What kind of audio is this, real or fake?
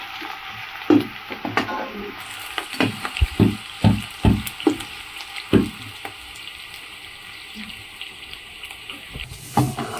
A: real